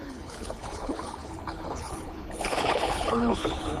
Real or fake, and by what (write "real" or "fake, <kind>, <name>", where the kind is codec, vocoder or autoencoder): fake, codec, HILCodec